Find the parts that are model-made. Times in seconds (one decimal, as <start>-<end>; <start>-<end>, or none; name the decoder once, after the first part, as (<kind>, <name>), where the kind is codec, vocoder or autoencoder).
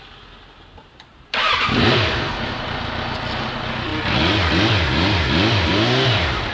1.1-2.1 (vocoder, BigVGAN v2)